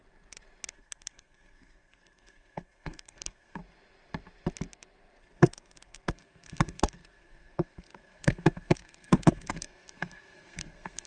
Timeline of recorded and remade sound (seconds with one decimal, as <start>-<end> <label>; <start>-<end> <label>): 0.0-0.7 recorded; 0.7-3.6 remade; 3.6-5.2 recorded; 5.2-11.1 remade